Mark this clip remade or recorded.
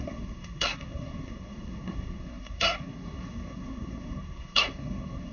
remade